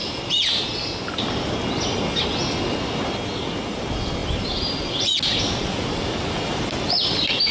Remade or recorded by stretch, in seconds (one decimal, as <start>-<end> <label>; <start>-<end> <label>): 0.0-7.5 recorded